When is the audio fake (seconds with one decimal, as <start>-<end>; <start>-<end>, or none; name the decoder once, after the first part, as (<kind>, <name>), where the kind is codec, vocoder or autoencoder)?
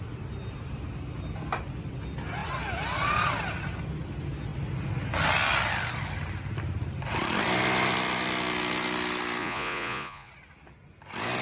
9.4-10.3 (vocoder, Vocos)